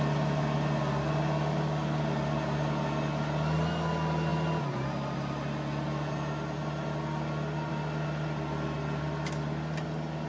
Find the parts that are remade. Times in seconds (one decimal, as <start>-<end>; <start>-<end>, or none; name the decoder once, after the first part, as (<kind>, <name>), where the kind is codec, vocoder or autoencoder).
none